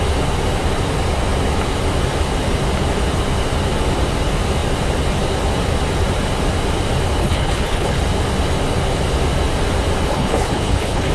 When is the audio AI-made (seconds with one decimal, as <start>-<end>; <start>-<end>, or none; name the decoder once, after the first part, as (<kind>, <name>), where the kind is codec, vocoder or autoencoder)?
7.2-8.0 (codec, HILCodec); 10.1-11.1